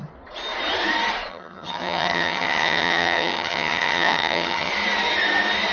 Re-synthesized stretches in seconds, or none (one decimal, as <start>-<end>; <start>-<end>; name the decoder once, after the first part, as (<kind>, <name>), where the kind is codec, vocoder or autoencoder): 1.3-4.7 (vocoder, HiFi-GAN)